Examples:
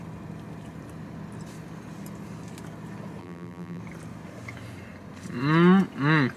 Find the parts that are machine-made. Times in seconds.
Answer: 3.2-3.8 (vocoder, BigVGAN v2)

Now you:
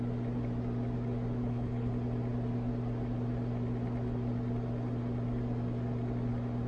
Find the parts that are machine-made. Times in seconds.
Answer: 1.4-1.9 (codec, HILCodec)

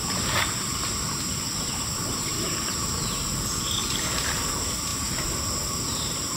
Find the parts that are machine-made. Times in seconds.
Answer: 2.0-6.4 (vocoder, BigVGAN v2)

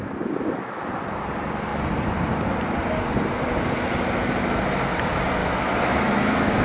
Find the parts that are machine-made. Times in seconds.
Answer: 5.4-6.6 (autoencoder, DAC-VAE)

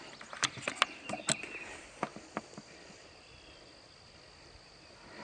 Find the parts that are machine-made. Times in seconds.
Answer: none

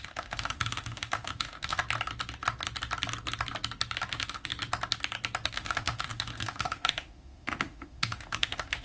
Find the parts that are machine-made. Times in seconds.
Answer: 0.0-1.8 (autoencoder, DAC-VAE); 4.1-4.5; 5.5-8.8

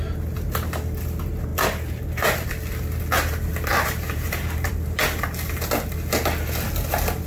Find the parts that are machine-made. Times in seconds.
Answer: 3.7-4.7 (vocoder, BigVGAN v2)

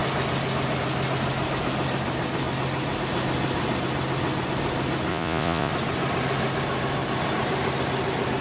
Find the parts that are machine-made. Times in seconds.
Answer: 5.1-5.7 (vocoder, Vocos)